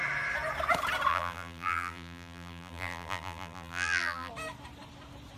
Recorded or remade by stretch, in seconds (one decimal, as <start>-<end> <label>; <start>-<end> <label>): 0.0-1.1 recorded; 1.1-4.3 remade; 4.3-5.4 recorded